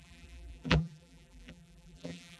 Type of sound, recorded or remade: remade